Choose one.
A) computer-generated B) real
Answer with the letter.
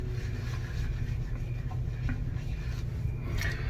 B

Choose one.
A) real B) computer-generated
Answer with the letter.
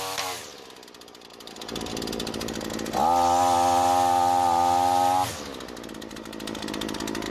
A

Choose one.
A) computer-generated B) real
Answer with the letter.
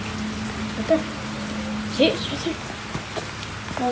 B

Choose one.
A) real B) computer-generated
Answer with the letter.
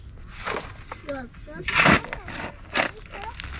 A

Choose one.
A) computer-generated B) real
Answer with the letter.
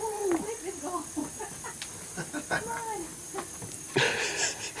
B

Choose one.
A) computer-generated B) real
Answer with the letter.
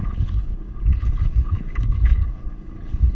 A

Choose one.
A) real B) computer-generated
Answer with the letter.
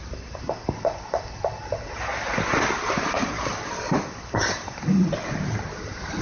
A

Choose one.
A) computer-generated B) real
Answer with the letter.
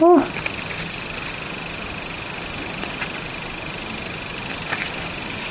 B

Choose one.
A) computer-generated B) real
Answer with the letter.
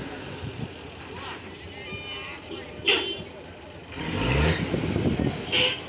B